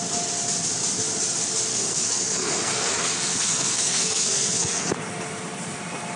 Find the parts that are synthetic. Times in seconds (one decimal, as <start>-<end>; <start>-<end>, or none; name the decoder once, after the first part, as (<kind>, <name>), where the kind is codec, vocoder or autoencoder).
1.7-4.9 (codec, SNAC)